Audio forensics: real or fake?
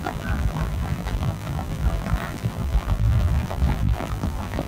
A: fake